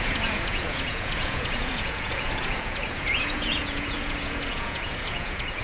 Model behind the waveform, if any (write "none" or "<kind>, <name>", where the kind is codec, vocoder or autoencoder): vocoder, Vocos